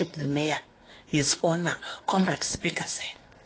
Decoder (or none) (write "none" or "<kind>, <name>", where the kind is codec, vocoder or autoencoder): codec, SNAC